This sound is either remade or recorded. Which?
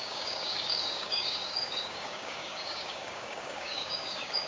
remade